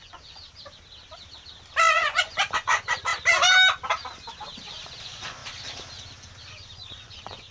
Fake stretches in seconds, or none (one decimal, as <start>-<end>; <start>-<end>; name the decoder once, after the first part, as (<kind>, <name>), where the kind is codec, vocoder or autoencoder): 0.0-0.4 (vocoder, Vocos); 1.9-3.1; 5.0-5.4; 6.5-7.5